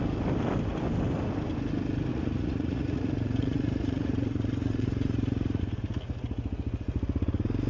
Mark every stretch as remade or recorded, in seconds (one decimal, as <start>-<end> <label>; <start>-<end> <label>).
0.0-2.1 recorded; 2.1-5.6 remade; 5.6-7.7 recorded